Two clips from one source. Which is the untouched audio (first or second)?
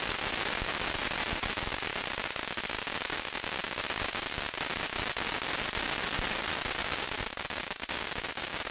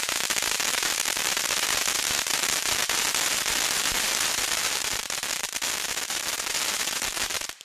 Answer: first